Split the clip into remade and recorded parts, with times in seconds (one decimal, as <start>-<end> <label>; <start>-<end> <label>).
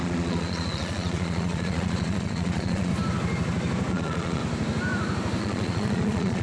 0.0-2.9 remade; 2.9-3.9 recorded; 3.9-4.4 remade; 4.4-5.4 recorded; 5.4-6.4 remade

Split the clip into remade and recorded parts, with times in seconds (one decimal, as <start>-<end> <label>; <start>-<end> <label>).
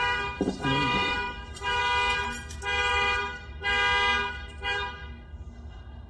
0.0-1.8 remade; 1.8-2.9 recorded; 2.9-3.7 remade; 3.7-4.3 recorded; 4.3-6.1 remade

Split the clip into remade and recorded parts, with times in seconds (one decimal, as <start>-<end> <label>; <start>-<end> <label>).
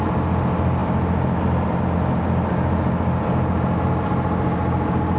0.0-5.2 recorded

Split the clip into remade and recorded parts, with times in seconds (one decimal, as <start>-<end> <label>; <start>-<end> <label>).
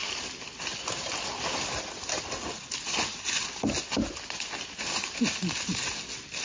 0.0-6.4 recorded